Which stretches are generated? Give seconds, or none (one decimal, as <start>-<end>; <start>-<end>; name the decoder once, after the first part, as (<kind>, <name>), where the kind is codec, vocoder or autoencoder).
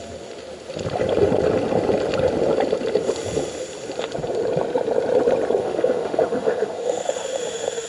5.6-7.9 (autoencoder, DAC-VAE)